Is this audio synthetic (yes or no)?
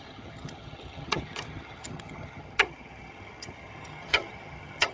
yes